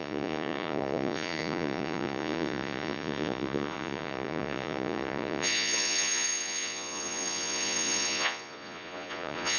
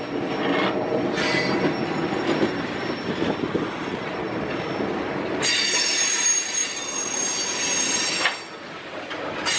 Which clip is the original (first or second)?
second